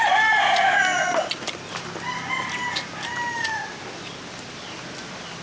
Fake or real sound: real